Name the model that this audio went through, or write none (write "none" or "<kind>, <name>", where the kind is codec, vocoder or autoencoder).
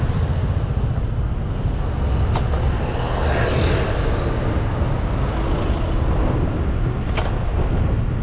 none